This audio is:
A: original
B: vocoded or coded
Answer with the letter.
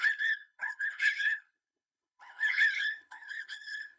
B